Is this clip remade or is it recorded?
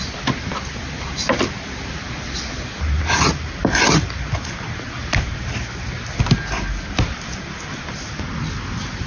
recorded